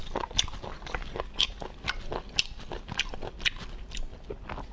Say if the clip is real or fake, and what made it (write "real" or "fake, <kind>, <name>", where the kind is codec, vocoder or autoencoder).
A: real